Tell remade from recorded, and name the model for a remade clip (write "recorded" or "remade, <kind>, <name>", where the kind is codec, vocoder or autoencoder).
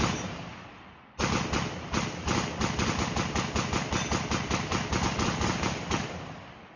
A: remade, vocoder, BigVGAN v2